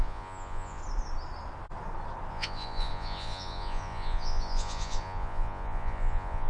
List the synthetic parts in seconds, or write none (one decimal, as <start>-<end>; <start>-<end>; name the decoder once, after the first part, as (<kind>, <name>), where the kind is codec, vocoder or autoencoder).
0.0-0.8 (vocoder, Vocos); 2.3-6.5